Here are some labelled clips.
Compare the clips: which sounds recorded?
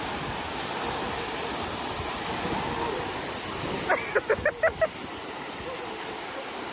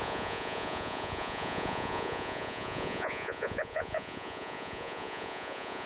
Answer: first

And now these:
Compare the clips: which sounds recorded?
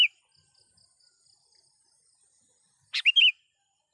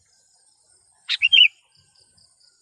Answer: first